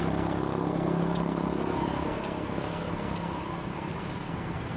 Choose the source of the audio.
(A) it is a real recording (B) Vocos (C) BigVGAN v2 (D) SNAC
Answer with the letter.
D